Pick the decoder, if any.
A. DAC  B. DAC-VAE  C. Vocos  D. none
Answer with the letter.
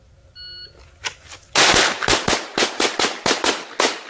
D